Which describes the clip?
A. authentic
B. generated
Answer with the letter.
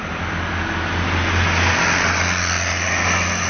A